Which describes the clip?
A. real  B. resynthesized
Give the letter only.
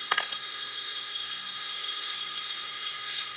B